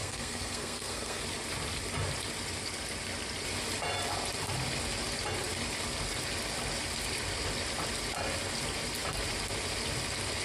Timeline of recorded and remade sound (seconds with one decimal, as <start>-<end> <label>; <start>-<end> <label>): 0.0-1.2 remade; 1.2-10.4 recorded